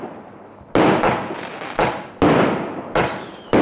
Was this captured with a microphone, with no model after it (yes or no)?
yes